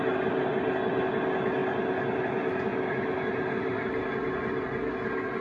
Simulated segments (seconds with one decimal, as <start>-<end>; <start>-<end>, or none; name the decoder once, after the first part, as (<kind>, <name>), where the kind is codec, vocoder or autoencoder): none